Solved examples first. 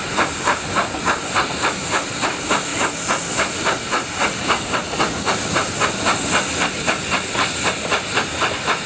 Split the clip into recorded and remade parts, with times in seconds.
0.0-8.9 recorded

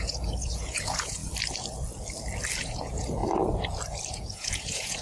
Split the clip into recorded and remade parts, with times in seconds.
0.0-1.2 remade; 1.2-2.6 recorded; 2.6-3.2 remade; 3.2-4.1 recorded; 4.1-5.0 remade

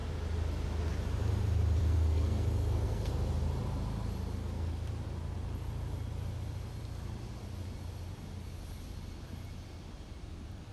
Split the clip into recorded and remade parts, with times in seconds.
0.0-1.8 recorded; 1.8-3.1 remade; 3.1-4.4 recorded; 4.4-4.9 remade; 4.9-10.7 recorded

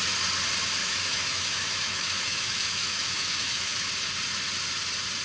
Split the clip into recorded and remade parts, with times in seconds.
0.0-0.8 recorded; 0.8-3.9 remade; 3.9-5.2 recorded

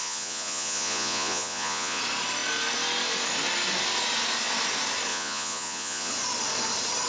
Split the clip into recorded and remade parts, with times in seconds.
0.0-2.0 remade; 2.0-5.1 recorded; 5.1-6.1 remade; 6.1-7.1 recorded

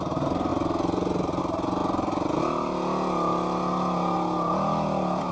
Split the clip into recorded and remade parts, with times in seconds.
0.0-5.3 recorded

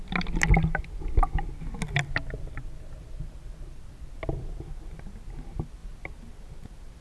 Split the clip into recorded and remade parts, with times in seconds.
0.0-7.0 recorded

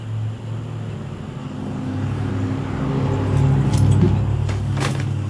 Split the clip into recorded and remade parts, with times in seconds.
0.0-1.4 recorded; 1.4-2.3 remade; 2.3-4.3 recorded; 4.3-5.3 remade